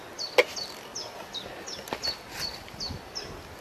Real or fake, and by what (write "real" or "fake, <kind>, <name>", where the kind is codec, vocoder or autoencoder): real